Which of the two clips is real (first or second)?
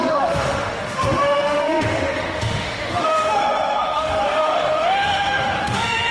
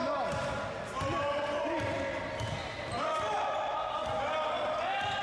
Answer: second